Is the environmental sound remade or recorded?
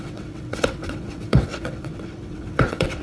remade